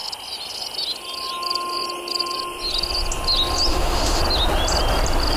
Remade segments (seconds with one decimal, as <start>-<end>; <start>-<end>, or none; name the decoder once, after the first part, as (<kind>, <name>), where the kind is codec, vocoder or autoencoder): 3.7-4.2 (autoencoder, DAC-VAE)